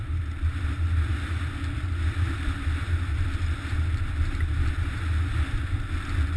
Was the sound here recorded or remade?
recorded